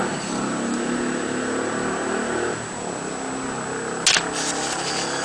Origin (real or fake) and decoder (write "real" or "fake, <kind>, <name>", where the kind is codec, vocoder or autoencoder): real